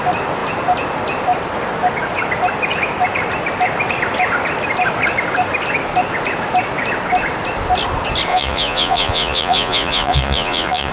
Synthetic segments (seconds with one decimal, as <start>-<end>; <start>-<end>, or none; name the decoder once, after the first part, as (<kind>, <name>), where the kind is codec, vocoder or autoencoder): 8.3-10.9 (vocoder, Vocos)